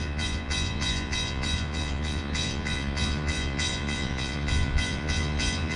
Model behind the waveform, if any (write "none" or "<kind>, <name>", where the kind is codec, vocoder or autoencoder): vocoder, Vocos